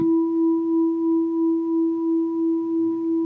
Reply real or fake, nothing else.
real